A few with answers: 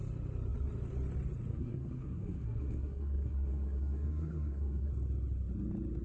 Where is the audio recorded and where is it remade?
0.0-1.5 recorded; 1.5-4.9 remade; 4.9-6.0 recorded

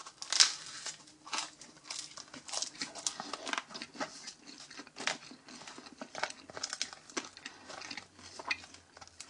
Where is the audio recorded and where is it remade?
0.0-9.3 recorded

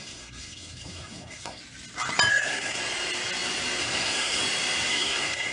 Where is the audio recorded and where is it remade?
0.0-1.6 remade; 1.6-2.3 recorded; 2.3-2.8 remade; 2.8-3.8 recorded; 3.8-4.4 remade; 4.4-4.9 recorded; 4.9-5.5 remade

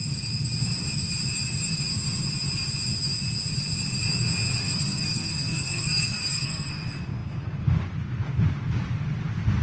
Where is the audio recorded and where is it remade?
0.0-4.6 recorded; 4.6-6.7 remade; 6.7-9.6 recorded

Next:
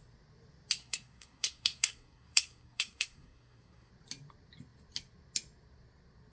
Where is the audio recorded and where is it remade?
0.0-0.8 recorded; 0.8-3.9 remade; 3.9-6.3 recorded

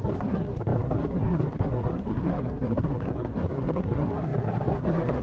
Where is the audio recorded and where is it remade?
0.0-5.2 remade

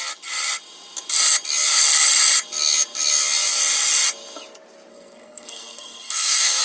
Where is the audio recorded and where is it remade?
0.0-4.9 recorded; 4.9-6.6 remade